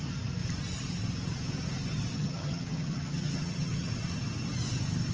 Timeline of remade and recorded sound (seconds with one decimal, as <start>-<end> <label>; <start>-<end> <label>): 0.0-2.1 recorded; 2.1-3.9 remade; 3.9-5.1 recorded